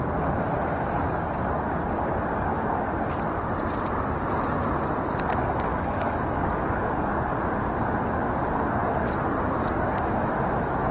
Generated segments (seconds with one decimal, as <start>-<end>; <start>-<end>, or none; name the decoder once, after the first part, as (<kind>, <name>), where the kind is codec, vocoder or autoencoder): 2.3-2.9 (codec, DAC); 5.7-7.4